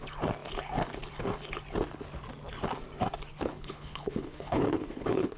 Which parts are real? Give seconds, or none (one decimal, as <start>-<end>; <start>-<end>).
0.0-3.3